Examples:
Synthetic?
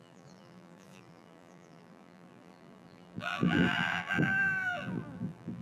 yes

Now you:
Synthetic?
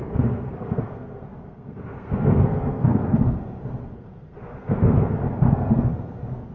yes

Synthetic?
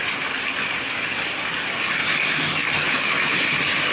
no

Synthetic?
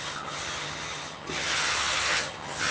yes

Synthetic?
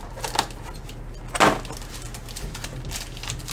no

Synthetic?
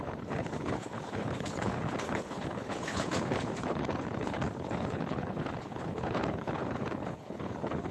yes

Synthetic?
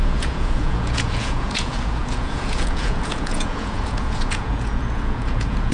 yes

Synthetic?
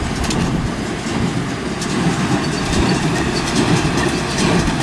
yes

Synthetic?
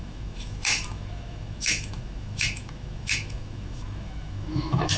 yes